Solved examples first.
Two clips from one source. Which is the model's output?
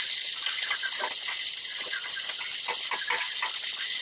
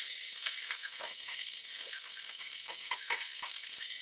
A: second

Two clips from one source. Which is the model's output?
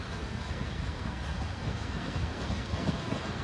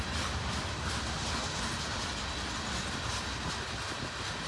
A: first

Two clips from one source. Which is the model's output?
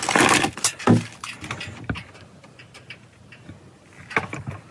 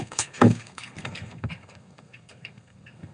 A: second